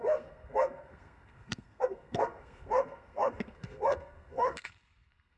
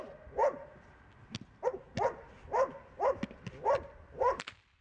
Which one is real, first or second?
second